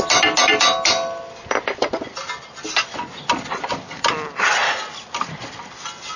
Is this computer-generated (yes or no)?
no